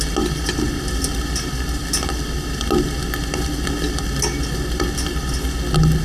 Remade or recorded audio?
recorded